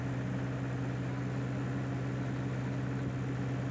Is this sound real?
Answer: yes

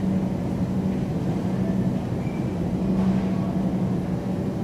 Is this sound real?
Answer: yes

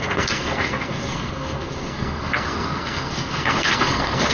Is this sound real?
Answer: no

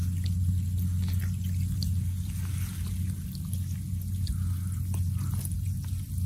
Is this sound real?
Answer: yes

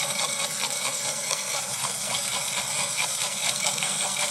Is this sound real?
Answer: no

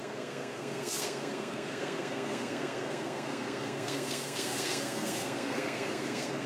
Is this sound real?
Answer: no